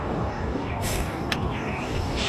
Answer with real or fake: fake